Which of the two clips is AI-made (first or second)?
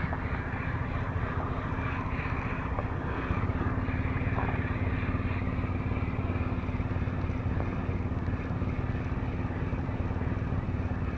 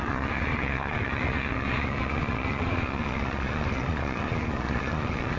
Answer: second